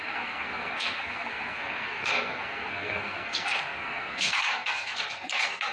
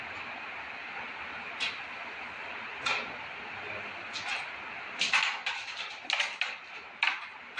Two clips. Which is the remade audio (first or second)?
first